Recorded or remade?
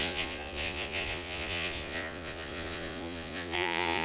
remade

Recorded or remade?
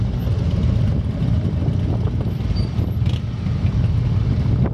recorded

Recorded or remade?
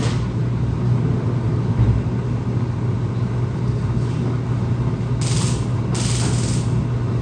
recorded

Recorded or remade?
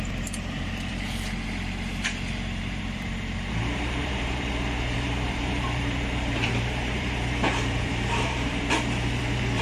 remade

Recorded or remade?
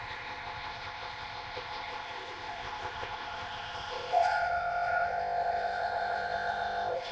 remade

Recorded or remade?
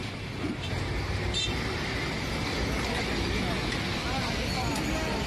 recorded